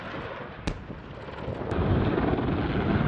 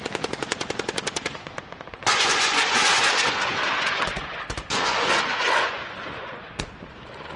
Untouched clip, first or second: first